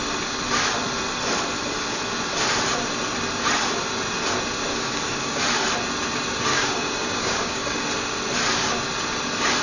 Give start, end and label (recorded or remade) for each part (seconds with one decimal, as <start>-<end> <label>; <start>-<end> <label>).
0.0-4.7 recorded; 4.7-5.4 remade; 5.4-6.5 recorded; 6.5-7.8 remade; 7.8-9.6 recorded